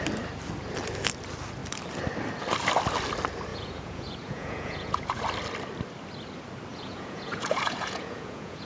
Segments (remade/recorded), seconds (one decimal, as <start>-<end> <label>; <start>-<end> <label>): 0.0-3.5 recorded; 3.5-5.2 remade; 5.2-6.7 recorded; 6.7-8.7 remade